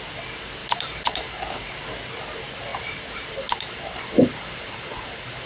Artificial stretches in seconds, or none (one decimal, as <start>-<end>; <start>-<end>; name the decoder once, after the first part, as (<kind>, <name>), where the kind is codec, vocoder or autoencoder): 0.6-1.8 (vocoder, BigVGAN v2); 2.7-5.5

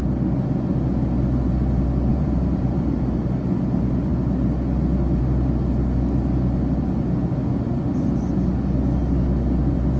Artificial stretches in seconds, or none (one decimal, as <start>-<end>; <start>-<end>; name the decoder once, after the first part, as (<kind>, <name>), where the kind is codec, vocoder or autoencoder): 2.1-3.0 (vocoder, BigVGAN v2); 7.6-8.2

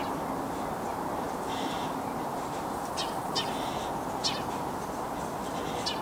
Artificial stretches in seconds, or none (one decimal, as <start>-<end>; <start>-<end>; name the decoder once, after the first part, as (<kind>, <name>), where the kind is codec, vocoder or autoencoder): 0.9-2.9 (vocoder, BigVGAN v2)

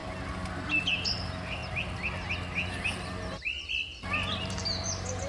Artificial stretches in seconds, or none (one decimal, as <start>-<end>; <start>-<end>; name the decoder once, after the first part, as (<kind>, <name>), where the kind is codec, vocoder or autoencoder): 0.9-1.6 (vocoder, BigVGAN v2); 4.4-5.3

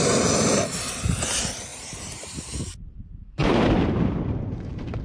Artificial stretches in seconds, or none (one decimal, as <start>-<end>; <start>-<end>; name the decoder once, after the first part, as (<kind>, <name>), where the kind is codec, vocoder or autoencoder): 1.7-5.0 (vocoder, BigVGAN v2)

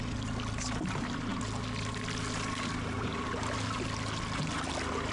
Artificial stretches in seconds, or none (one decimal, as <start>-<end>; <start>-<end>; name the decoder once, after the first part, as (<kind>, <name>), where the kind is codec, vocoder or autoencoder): none

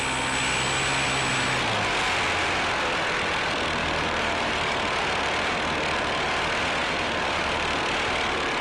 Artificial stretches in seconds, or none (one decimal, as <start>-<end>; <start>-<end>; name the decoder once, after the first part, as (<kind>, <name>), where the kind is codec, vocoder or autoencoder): 3.8-5.0 (vocoder, BigVGAN v2); 6.8-7.8